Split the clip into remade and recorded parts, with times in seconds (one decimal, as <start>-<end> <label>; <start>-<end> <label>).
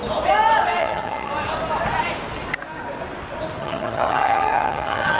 0.0-0.8 recorded; 0.8-1.3 remade; 1.3-3.6 recorded; 3.6-5.2 remade